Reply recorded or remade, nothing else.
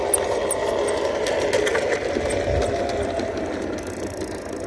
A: recorded